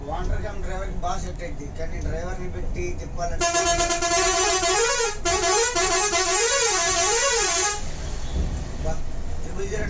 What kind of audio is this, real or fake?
real